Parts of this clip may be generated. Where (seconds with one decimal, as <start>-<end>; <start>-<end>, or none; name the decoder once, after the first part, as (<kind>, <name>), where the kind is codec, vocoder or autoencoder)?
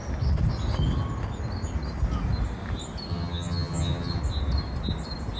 3.1-4.2 (vocoder, HiFi-GAN)